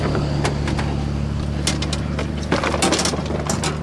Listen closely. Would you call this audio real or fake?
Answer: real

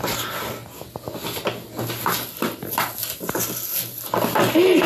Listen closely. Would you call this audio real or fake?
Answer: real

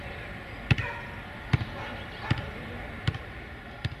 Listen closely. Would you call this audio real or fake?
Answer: real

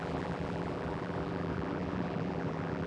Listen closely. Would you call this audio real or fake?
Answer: fake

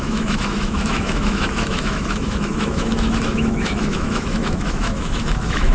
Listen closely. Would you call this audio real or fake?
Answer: fake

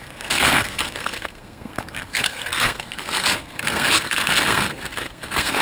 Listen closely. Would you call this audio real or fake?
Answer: fake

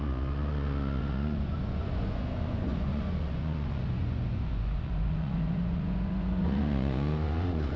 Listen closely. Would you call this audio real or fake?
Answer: fake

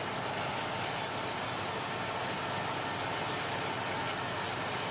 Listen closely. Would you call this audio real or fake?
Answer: real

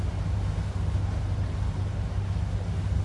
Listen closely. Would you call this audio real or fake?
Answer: real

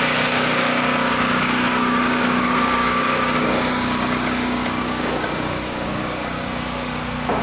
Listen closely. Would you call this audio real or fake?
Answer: fake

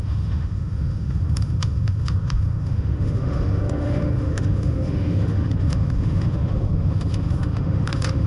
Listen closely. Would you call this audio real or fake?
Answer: fake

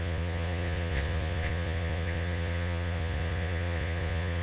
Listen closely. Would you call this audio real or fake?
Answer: fake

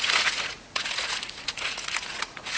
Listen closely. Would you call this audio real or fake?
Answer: fake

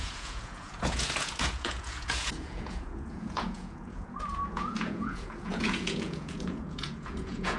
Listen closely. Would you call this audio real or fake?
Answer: fake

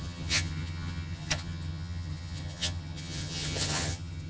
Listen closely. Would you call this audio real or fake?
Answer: fake